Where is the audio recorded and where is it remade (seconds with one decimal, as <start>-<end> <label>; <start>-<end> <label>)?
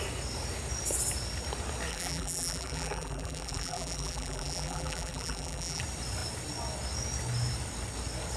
0.0-1.9 recorded; 1.9-5.8 remade; 5.8-8.4 recorded